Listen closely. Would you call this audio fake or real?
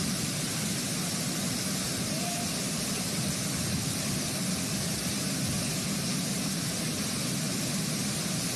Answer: real